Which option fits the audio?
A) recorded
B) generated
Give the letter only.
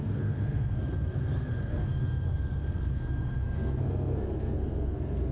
B